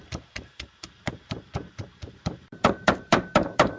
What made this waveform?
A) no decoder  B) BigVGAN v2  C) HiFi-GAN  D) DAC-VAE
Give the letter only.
B